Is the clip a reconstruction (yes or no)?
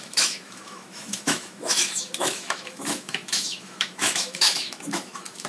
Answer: yes